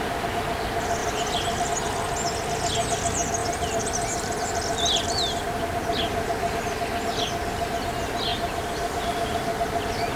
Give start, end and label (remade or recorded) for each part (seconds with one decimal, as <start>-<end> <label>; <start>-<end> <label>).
0.0-1.0 recorded; 1.0-1.7 remade; 1.7-3.4 recorded; 3.4-6.8 remade; 6.8-8.3 recorded; 8.3-9.0 remade; 9.0-10.2 recorded